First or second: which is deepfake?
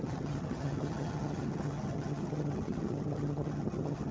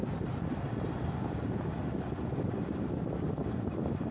first